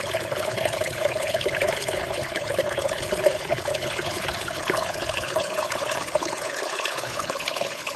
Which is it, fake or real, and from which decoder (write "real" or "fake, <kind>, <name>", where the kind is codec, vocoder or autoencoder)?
fake, codec, HILCodec